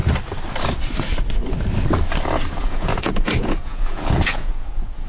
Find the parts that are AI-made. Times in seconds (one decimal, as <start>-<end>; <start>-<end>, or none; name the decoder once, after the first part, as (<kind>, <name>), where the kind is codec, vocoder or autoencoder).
2.6-5.1 (vocoder, Vocos)